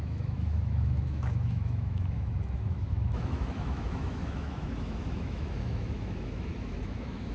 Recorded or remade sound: remade